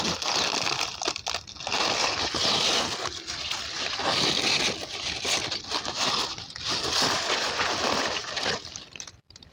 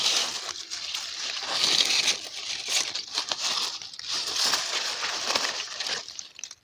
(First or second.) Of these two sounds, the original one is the first